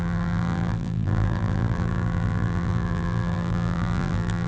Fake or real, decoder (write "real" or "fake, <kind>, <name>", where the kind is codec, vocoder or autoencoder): fake, vocoder, BigVGAN v2